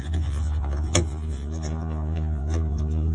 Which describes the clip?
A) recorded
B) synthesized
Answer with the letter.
B